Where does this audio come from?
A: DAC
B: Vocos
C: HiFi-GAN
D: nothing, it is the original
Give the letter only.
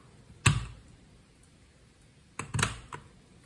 D